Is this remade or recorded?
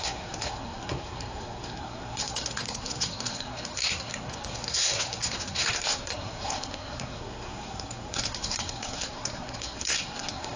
remade